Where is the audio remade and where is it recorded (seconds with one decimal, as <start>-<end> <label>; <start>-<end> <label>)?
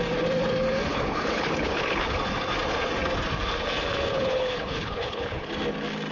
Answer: 0.0-0.9 recorded; 0.9-2.2 remade; 2.2-4.1 recorded; 4.1-5.5 remade; 5.5-6.1 recorded